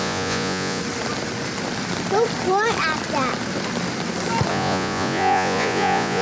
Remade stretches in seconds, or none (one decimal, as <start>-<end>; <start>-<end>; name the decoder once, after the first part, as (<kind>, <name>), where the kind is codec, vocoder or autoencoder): 0.0-0.8 (vocoder, Vocos); 4.5-6.2